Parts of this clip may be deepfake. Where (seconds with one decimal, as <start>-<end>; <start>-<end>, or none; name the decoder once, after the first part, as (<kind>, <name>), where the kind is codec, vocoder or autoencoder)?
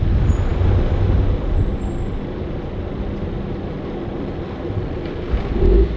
none